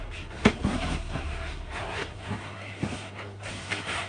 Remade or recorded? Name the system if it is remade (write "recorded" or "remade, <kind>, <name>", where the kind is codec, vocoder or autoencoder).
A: remade, codec, SNAC